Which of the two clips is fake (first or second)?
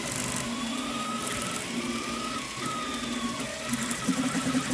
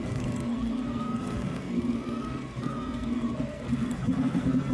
second